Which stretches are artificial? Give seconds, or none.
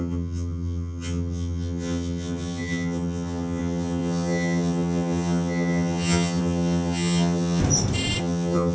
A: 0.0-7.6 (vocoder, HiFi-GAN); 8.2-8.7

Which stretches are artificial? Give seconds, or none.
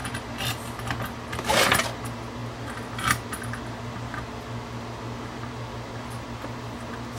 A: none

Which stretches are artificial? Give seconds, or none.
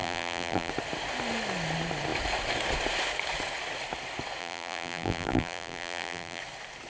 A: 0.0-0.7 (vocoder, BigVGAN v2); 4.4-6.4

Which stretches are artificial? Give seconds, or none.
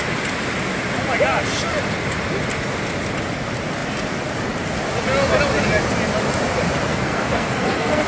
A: 6.9-8.1 (codec, SNAC)